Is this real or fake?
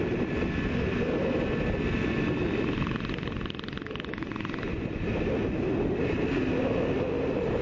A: real